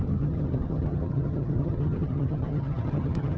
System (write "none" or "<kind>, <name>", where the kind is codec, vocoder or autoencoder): vocoder, HiFi-GAN